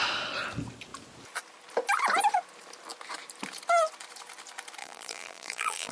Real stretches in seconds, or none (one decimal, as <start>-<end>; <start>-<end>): 0.0-4.8